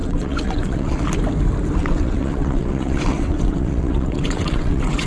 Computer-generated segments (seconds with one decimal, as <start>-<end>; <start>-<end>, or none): 0.0-1.0; 1.8-5.1